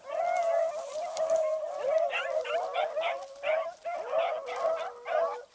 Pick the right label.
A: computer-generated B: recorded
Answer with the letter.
B